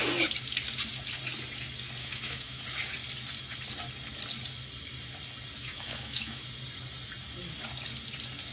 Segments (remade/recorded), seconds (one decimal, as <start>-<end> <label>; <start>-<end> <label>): 0.0-2.0 recorded; 2.0-2.6 remade; 2.6-5.6 recorded; 5.6-6.4 remade; 6.4-8.5 recorded